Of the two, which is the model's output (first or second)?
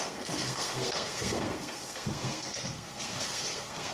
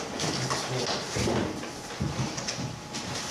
first